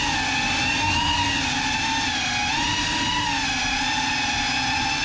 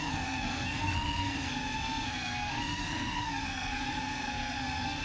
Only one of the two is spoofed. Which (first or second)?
second